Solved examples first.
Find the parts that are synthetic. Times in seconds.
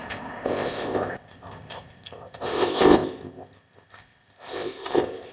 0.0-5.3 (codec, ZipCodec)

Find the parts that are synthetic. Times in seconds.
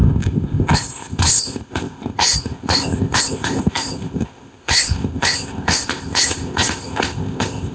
0.0-7.7 (codec, ZipCodec)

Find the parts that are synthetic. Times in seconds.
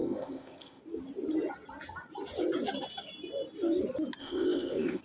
0.0-0.8 (codec, ZipCodec); 4.2-5.0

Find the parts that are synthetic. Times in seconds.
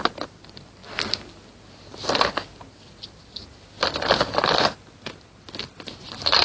none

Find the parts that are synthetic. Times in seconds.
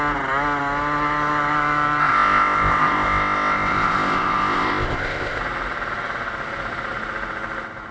2.0-5.4 (codec, ZipCodec)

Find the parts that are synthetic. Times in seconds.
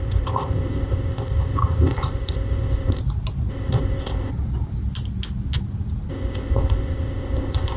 0.0-3.0 (codec, ZipCodec); 3.5-4.3; 6.1-7.8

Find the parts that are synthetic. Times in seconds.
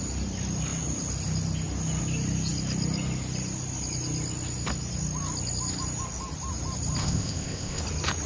7.0-7.8 (codec, ZipCodec)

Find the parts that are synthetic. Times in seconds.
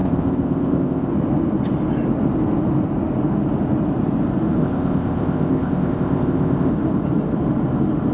0.0-1.1 (codec, ZipCodec); 4.6-6.7